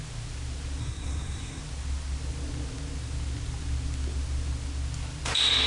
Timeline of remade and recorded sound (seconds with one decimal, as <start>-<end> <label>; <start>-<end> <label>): 0.0-0.8 recorded; 0.8-1.6 remade; 1.6-5.7 recorded